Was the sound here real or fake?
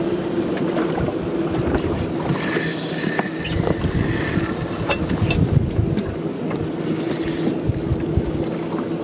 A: real